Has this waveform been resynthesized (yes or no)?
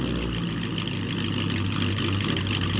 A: no